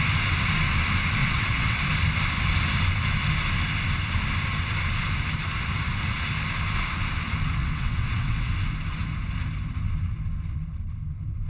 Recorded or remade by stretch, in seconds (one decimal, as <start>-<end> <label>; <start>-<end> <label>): 0.0-1.2 recorded; 1.2-1.8 remade; 1.8-7.6 recorded; 7.6-8.5 remade; 8.5-11.5 recorded